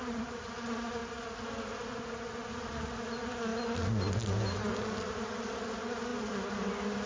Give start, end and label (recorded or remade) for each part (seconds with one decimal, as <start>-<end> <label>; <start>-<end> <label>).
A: 0.0-7.1 recorded